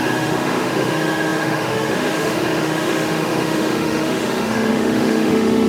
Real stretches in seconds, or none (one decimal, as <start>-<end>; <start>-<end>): none